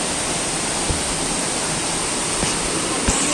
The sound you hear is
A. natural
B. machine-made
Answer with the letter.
A